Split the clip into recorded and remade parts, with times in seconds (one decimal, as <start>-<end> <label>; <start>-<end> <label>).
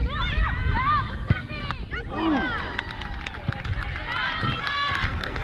0.0-1.1 recorded; 1.1-1.6 remade; 1.6-4.6 recorded; 4.6-5.4 remade